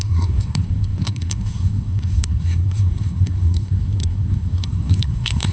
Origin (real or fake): fake